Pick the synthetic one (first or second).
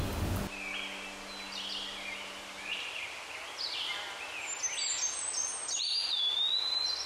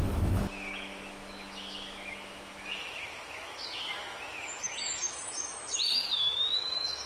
second